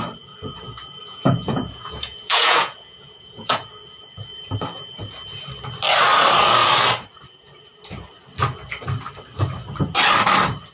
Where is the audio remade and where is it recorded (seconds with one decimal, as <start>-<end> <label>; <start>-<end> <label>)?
0.0-1.0 recorded; 1.0-3.7 remade; 3.7-10.7 recorded

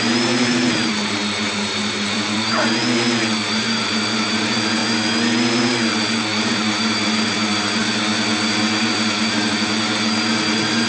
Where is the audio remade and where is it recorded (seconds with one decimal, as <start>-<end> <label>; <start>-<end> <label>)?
0.0-2.8 remade; 2.8-3.5 recorded; 3.5-4.8 remade; 4.8-5.9 recorded; 5.9-7.8 remade; 7.8-8.6 recorded; 8.6-10.9 remade